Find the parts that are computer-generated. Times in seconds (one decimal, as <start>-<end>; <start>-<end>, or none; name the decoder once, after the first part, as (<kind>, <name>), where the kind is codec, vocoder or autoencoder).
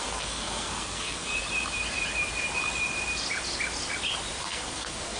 0.0-1.3 (codec, SNAC); 4.4-5.2